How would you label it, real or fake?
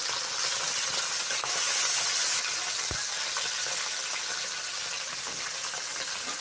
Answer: real